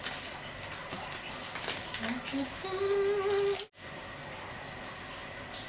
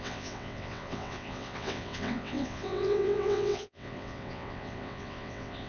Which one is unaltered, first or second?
first